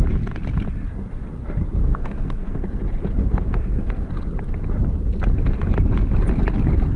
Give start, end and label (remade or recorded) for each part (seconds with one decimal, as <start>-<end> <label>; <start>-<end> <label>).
0.0-1.8 recorded; 1.8-2.8 remade; 2.8-3.2 recorded; 3.2-4.1 remade; 4.1-7.0 recorded